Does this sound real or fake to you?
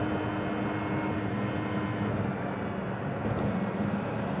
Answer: real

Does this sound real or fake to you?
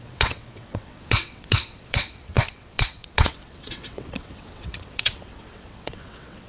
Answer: fake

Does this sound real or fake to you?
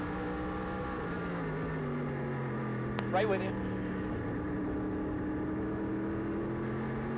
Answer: real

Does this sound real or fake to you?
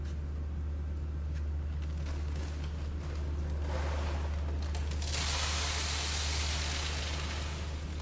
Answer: real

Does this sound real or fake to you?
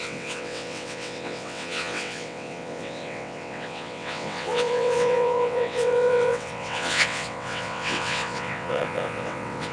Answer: fake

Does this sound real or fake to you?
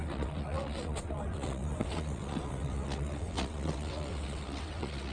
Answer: fake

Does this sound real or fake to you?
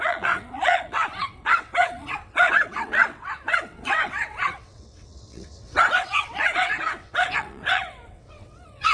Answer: fake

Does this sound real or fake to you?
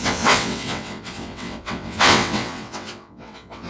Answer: fake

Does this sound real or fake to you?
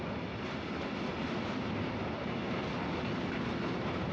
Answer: real